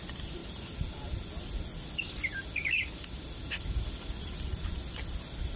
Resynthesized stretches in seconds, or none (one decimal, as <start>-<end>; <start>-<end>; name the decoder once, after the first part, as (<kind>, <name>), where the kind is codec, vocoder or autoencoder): none